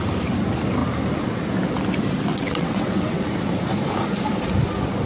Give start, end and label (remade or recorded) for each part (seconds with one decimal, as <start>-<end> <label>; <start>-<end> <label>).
0.0-2.3 recorded; 2.3-3.3 remade; 3.3-5.1 recorded